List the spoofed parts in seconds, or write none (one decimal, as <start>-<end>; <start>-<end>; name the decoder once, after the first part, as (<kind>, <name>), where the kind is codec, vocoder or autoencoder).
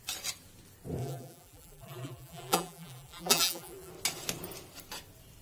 1.0-3.9 (vocoder, BigVGAN v2)